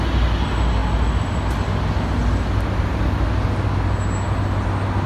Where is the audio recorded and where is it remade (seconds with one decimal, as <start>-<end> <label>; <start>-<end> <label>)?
0.0-5.1 recorded